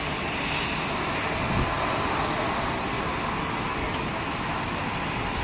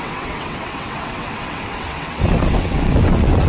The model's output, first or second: second